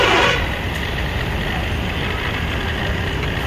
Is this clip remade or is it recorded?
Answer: recorded